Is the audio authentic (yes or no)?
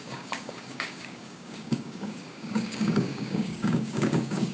no